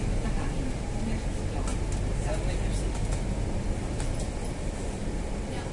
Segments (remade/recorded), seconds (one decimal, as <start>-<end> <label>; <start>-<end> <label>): 0.0-5.7 recorded